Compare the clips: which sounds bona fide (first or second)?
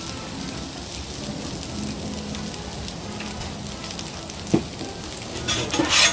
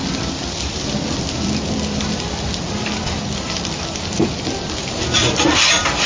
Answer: first